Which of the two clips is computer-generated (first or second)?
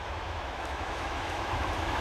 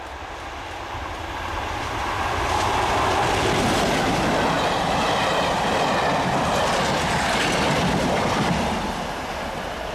first